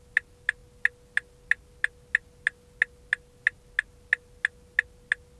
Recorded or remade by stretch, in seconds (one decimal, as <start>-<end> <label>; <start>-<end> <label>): 0.0-5.4 recorded